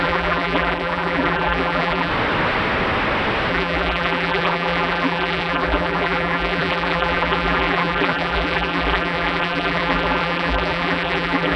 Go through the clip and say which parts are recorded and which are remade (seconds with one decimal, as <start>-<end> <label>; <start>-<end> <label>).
0.0-2.1 remade; 2.1-3.5 recorded; 3.5-11.6 remade